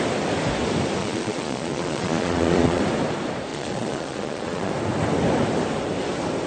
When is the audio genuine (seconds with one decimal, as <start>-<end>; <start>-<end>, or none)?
0.0-1.0; 2.8-3.5; 4.7-6.5